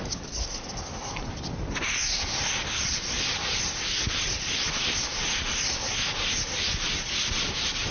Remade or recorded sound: recorded